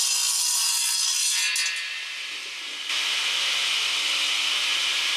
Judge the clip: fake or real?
real